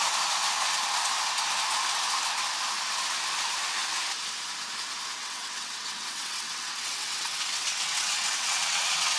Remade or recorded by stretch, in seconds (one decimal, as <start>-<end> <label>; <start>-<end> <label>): 0.0-5.2 recorded; 5.2-9.2 remade